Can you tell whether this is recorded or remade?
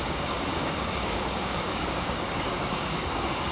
remade